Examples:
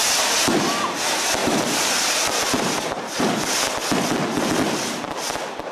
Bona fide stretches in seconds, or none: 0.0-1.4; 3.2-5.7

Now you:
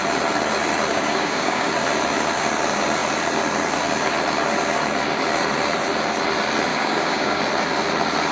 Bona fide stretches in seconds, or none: 0.0-0.9; 1.7-6.7; 7.4-8.3

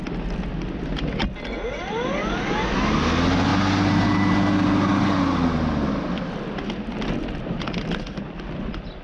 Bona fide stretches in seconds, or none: 0.0-9.0

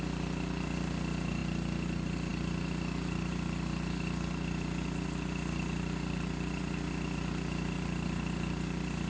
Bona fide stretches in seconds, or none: 0.0-9.1

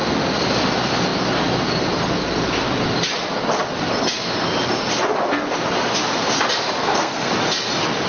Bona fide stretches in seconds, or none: 0.0-6.8; 7.3-8.1